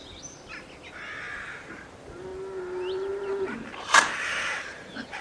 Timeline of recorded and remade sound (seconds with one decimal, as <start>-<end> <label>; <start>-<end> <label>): 0.0-1.3 recorded; 1.3-2.3 remade; 2.3-3.8 recorded; 3.8-5.2 remade

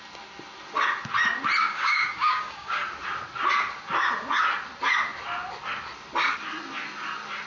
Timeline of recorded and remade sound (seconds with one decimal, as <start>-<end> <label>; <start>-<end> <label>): 0.0-1.6 recorded; 1.6-2.8 remade; 2.8-7.5 recorded

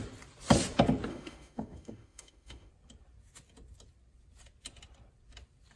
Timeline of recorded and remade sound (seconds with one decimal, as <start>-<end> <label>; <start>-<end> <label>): 0.0-1.1 recorded; 1.1-2.7 remade; 2.7-5.8 recorded